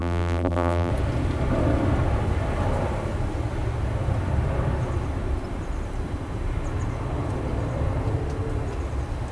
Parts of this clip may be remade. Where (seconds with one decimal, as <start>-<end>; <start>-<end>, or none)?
0.0-0.9